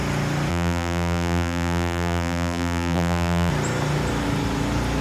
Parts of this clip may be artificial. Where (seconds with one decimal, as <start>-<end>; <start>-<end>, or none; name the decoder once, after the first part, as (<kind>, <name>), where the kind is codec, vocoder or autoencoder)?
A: 0.5-3.5 (vocoder, BigVGAN v2)